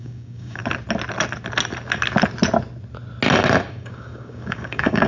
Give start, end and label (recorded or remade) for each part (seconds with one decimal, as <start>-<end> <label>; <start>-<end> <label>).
0.0-0.6 remade; 0.6-3.7 recorded; 3.7-5.1 remade